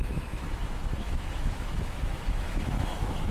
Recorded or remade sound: remade